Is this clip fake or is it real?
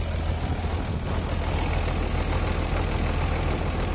real